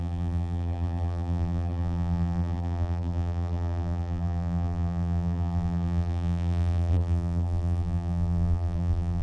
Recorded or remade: remade